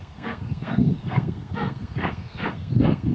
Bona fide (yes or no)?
no